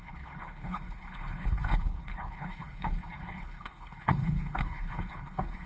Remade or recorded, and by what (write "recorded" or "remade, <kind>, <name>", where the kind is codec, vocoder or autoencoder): remade, codec, HILCodec